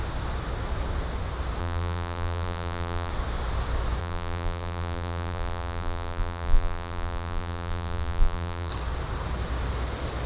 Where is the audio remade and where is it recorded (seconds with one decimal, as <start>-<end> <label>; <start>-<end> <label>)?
0.0-1.6 recorded; 1.6-3.1 remade; 3.1-4.0 recorded; 4.0-8.7 remade; 8.7-10.3 recorded